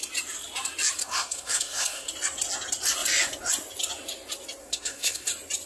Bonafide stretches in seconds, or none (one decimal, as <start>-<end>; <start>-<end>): 0.0-1.0; 2.1-4.6; 5.3-5.7